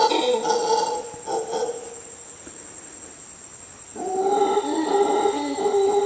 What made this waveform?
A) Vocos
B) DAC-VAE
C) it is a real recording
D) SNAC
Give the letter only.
C